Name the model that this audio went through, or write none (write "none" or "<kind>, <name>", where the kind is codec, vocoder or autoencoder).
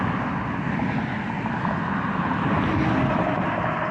none